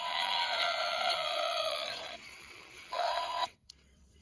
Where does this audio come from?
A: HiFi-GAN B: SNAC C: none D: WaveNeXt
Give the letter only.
D